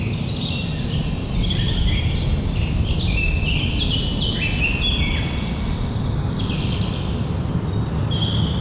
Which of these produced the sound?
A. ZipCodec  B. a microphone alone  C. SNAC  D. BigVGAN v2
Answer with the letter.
B